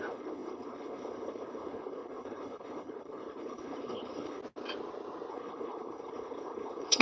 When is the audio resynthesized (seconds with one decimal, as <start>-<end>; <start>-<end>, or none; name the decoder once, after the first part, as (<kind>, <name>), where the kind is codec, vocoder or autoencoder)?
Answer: 0.0-4.4 (codec, HILCodec); 5.3-7.0